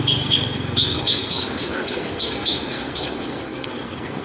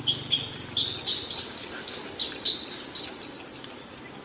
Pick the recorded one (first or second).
second